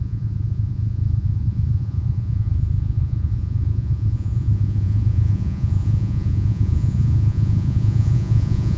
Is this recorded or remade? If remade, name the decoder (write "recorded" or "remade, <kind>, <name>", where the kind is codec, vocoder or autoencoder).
remade, vocoder, Vocos